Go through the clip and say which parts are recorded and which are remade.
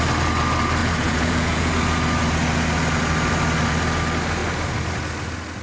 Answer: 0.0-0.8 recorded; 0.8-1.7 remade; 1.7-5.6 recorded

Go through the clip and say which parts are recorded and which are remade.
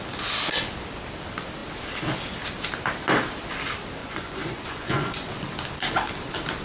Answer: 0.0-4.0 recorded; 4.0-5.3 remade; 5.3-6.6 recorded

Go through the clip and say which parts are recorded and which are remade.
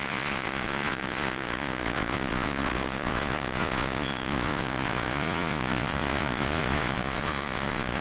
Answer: 0.0-8.0 remade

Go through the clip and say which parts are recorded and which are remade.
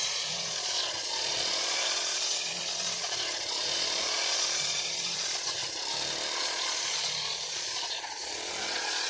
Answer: 0.0-5.6 remade; 5.6-6.4 recorded; 6.4-9.1 remade